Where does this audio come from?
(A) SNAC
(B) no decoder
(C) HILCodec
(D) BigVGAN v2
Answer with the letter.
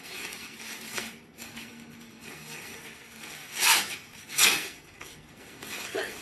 A